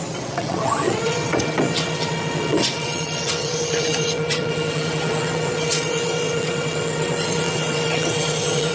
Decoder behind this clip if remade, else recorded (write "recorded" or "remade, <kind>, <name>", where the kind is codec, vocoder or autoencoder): remade, vocoder, WaveNeXt